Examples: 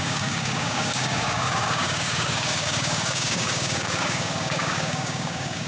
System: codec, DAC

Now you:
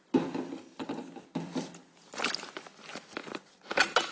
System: none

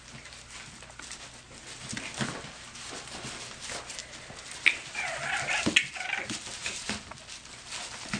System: none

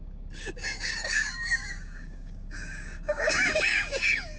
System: codec, DAC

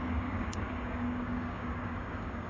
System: codec, DAC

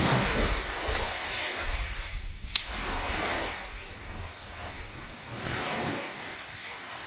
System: codec, DAC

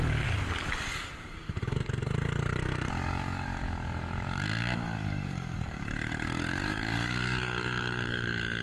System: codec, DAC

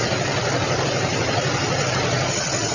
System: none